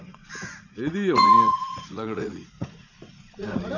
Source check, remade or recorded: remade